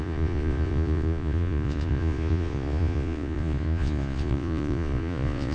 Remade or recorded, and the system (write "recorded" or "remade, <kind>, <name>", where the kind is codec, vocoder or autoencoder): remade, vocoder, Vocos